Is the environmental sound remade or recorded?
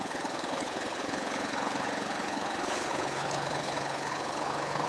remade